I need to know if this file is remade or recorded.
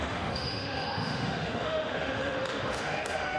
remade